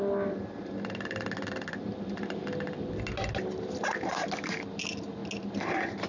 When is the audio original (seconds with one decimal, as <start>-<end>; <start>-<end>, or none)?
0.0-6.1